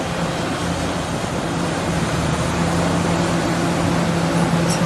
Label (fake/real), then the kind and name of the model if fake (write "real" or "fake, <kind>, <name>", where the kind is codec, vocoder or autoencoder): real